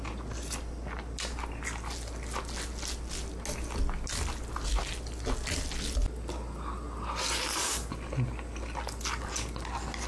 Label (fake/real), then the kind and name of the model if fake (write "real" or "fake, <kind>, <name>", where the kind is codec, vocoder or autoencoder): real